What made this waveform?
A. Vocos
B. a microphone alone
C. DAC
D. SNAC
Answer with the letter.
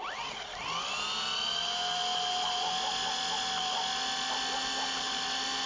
B